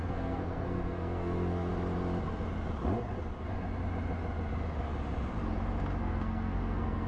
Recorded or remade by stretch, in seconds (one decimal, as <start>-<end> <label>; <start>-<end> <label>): 0.0-1.7 remade; 1.7-6.0 recorded; 6.0-7.1 remade